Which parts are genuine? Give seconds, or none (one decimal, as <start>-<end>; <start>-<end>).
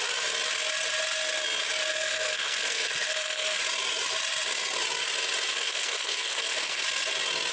0.0-1.9; 3.6-5.5; 6.8-7.5